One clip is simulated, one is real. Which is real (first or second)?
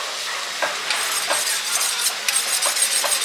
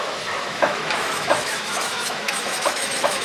first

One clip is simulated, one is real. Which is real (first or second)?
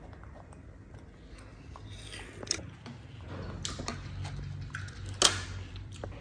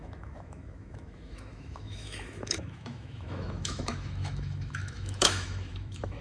first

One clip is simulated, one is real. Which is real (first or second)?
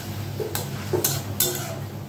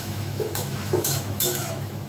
first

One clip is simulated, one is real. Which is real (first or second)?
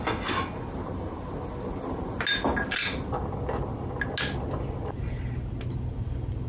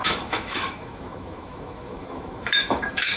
first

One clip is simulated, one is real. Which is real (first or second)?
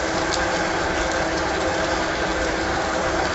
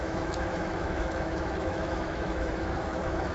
first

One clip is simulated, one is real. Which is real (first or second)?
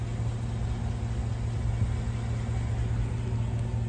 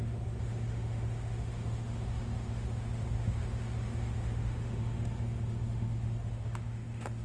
first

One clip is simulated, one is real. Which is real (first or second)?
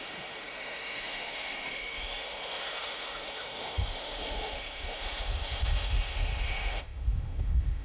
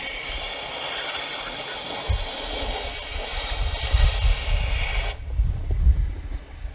second